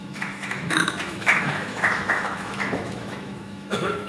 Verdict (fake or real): fake